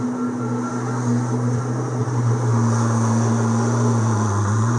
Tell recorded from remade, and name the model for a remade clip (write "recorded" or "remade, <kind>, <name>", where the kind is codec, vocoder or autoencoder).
recorded